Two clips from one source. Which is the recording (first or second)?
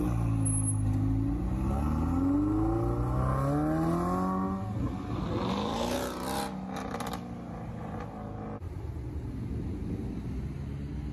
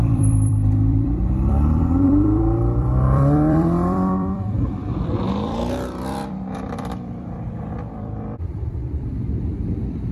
first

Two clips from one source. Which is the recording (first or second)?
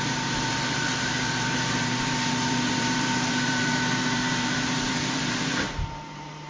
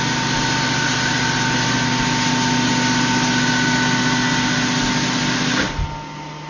second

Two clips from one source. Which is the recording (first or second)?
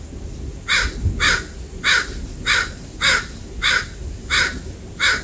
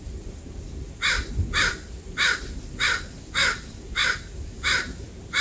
first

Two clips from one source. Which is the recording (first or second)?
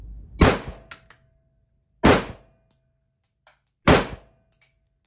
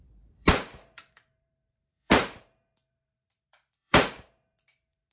first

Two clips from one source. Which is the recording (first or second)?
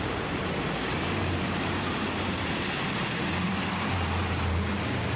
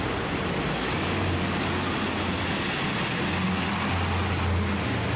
second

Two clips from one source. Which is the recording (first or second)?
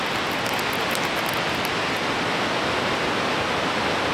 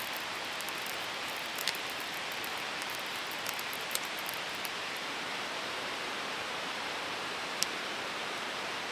first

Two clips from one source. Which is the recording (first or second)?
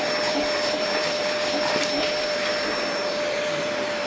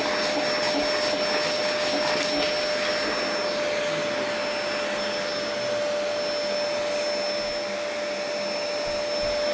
second